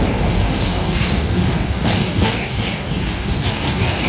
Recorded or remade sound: remade